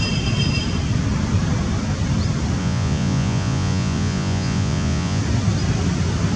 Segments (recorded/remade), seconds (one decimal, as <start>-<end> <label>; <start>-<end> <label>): 0.0-2.6 recorded; 2.6-5.2 remade; 5.2-6.4 recorded